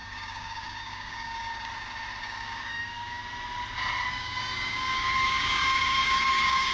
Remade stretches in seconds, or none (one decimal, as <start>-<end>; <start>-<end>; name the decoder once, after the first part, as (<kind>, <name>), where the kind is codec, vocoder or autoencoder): 0.0-1.5 (codec, DAC); 2.2-3.2; 4.1-6.7